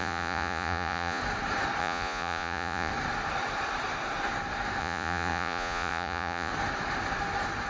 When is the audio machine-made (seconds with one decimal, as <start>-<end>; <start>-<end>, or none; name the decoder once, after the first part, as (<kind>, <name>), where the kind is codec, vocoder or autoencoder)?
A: 0.0-1.2 (vocoder, Vocos); 1.8-2.9; 4.8-6.5